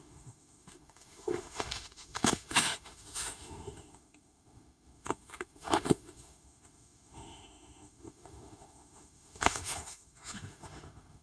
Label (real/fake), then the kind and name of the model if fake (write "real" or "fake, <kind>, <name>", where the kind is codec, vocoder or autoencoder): fake, autoencoder, DAC-VAE